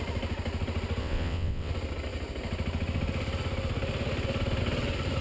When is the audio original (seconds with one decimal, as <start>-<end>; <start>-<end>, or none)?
0.0-1.0; 1.7-5.2